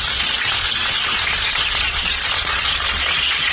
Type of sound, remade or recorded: remade